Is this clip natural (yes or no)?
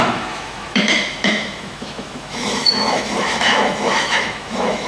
no